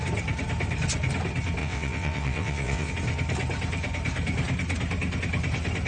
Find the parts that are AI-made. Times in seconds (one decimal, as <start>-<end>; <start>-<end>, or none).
1.6-2.9